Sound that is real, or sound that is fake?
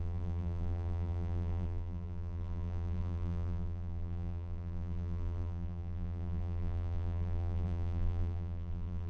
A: fake